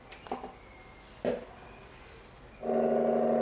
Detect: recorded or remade recorded